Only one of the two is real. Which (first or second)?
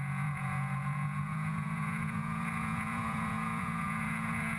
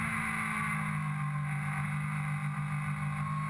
second